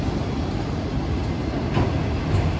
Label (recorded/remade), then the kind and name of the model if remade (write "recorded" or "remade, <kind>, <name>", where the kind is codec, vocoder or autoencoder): recorded